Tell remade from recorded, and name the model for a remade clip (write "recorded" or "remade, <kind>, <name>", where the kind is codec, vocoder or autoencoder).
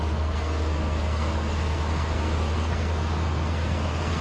remade, codec, SNAC